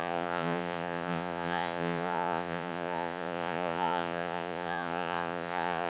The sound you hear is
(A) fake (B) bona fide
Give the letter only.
A